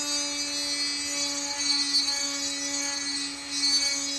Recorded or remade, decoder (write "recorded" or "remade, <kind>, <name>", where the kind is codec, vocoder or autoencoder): recorded